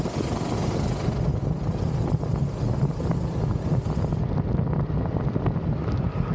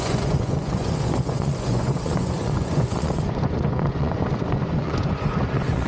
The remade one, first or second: second